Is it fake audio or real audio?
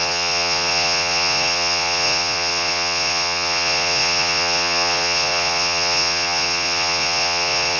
fake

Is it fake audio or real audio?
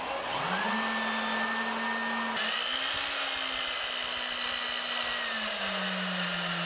real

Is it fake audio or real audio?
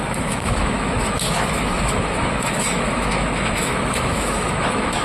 fake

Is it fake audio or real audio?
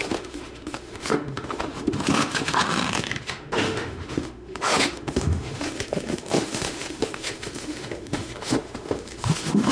fake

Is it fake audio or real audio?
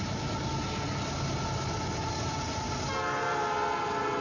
real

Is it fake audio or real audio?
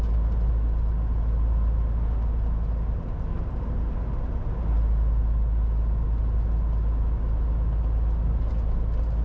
real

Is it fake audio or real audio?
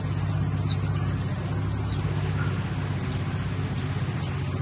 real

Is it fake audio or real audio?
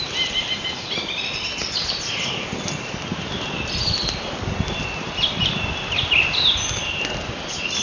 real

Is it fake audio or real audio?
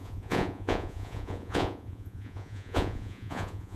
fake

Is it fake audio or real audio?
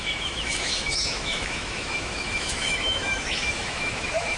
fake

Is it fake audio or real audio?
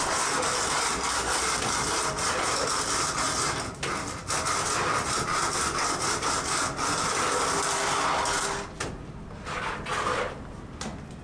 real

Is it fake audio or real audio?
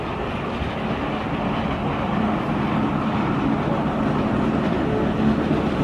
real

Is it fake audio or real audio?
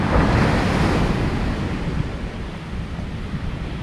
real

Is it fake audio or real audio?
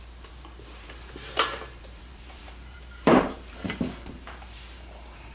fake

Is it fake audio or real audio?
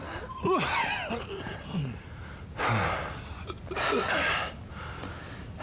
real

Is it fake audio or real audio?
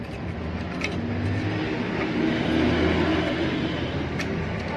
real